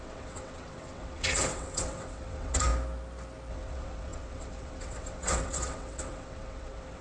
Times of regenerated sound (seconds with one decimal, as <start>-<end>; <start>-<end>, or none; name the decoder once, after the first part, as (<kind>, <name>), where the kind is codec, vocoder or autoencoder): 0.0-2.7 (vocoder, WaveNeXt); 3.5-7.0